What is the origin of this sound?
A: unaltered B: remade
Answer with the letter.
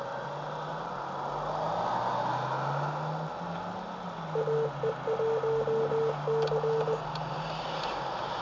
A